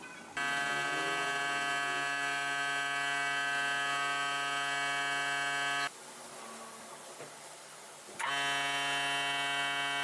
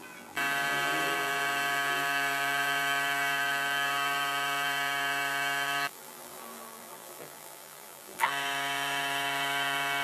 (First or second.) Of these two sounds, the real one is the first